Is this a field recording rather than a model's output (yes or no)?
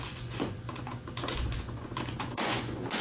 no